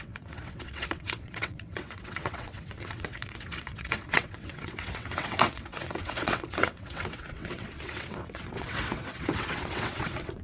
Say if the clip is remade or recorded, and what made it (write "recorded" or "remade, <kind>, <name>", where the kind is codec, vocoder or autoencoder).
remade, vocoder, WaveNeXt